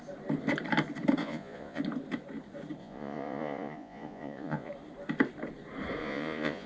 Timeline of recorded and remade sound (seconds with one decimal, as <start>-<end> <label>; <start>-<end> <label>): 0.0-1.2 recorded; 1.2-1.8 remade; 1.8-2.8 recorded; 2.8-4.7 remade; 4.7-6.0 recorded; 6.0-6.7 remade